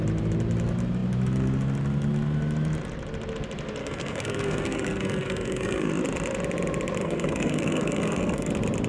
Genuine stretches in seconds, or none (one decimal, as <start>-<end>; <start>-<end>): 0.0-3.8; 5.9-7.0; 8.5-8.9